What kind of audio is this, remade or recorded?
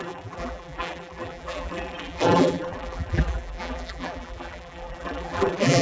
remade